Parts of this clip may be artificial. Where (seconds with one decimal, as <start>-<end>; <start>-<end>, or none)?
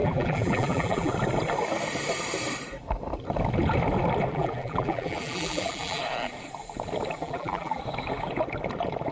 0.0-1.1; 4.3-6.0; 7.2-7.8